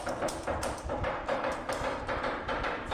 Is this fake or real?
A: fake